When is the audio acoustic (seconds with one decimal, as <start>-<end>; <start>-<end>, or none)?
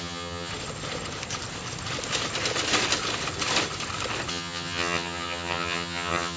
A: 0.5-4.3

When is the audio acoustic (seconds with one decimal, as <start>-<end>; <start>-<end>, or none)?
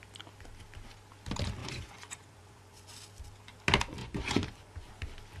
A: 0.0-1.6; 2.9-4.0; 4.9-5.4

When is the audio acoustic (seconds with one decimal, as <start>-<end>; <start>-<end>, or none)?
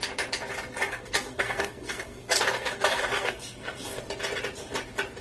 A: 0.0-0.9; 4.0-5.2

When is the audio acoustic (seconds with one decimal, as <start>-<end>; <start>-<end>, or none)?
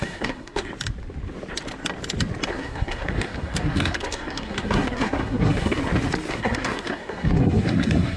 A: 0.7-2.5; 5.8-6.3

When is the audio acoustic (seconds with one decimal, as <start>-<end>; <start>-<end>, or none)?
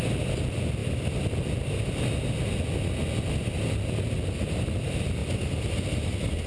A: 0.0-6.5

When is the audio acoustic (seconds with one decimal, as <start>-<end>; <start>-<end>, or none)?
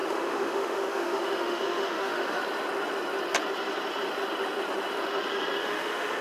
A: 2.4-5.6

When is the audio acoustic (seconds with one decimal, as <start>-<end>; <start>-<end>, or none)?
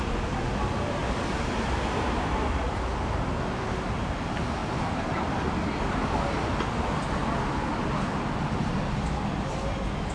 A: 0.0-10.1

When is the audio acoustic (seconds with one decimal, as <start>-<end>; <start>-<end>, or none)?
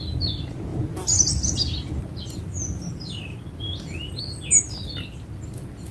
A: 0.0-5.9